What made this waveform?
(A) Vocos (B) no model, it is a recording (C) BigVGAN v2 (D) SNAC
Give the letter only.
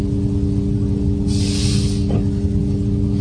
B